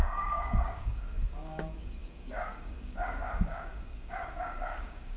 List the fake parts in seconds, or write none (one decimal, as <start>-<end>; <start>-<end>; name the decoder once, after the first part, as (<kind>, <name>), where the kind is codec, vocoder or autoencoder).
0.0-5.2 (codec, DAC)

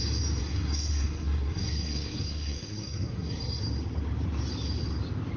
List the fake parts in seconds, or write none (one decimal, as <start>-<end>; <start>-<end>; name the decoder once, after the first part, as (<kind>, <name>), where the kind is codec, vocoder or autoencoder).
0.4-3.6 (codec, SNAC)

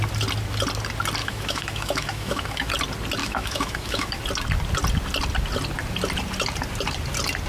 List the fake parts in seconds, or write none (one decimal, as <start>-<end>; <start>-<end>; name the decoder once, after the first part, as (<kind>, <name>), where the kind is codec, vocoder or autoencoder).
1.2-2.7 (autoencoder, DAC-VAE); 3.2-4.2

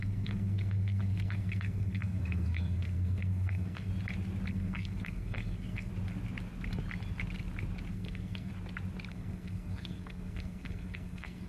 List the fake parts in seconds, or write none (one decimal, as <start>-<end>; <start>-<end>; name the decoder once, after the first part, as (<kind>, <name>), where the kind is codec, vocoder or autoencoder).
0.0-3.9 (codec, SNAC); 4.5-5.9; 7.9-8.5; 9.1-11.5

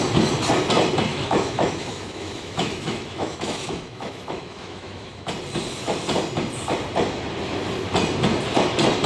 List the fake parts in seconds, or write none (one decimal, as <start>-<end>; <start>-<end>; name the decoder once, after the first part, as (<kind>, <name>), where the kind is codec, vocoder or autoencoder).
1.1-5.3 (autoencoder, DAC-VAE)

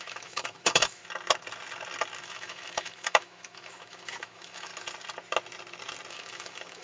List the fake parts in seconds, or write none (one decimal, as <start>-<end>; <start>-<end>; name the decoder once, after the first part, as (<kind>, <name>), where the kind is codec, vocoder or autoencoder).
0.0-1.0 (autoencoder, DAC-VAE); 2.2-4.7; 6.1-6.8

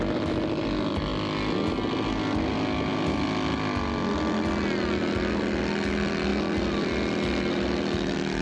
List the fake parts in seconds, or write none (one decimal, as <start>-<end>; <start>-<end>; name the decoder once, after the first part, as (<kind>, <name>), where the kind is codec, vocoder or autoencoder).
none

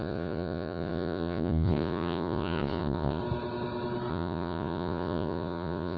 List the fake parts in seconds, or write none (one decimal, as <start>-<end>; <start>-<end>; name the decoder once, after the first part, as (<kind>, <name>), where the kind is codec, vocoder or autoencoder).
0.0-3.2 (vocoder, Vocos); 4.1-6.0